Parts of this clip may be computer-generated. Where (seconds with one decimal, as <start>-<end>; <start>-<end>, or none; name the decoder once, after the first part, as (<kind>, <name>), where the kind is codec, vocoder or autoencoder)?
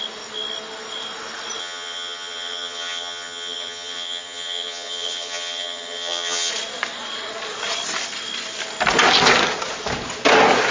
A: 1.6-6.5 (vocoder, HiFi-GAN)